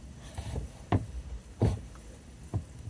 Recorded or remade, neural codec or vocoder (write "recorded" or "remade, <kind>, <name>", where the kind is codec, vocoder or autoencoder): remade, vocoder, BigVGAN v2